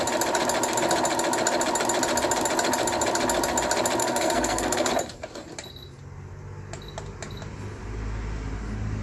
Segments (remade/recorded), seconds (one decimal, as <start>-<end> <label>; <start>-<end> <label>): 0.0-4.0 recorded; 4.0-4.9 remade; 4.9-9.0 recorded